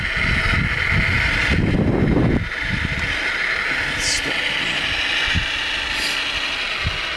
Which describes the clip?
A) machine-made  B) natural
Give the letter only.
B